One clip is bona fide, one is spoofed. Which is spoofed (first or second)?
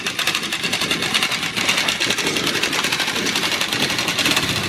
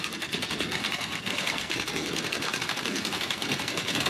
second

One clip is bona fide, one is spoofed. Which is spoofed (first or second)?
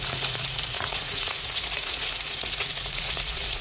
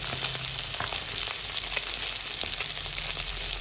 first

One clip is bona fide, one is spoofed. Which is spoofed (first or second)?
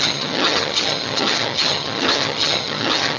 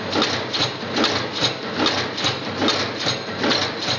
first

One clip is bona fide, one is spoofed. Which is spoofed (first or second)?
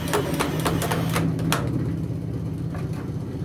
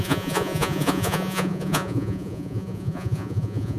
second